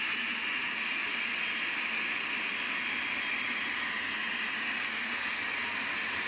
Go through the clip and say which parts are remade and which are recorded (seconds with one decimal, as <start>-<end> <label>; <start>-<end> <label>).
0.0-1.0 recorded; 1.0-4.8 remade; 4.8-6.3 recorded